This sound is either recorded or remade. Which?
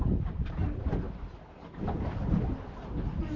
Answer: recorded